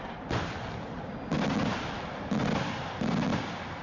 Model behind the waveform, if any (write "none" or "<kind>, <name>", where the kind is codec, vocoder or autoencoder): none